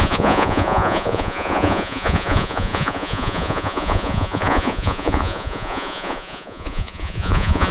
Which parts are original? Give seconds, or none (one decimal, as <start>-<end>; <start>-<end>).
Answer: none